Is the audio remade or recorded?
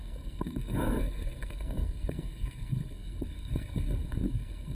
remade